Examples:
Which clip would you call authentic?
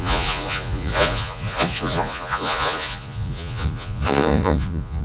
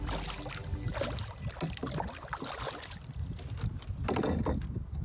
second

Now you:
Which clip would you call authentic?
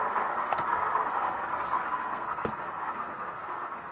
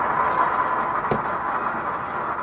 second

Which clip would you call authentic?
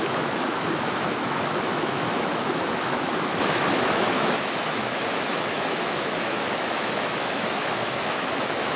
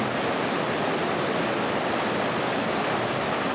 second